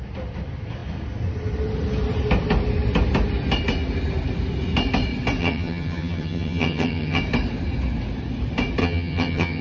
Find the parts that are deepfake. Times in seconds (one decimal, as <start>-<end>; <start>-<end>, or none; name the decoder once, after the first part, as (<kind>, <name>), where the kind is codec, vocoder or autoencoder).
5.4-7.2 (vocoder, HiFi-GAN); 8.8-9.6